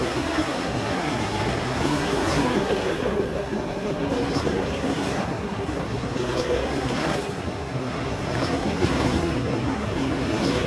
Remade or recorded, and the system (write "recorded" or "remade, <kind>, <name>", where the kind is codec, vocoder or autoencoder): remade, codec, SNAC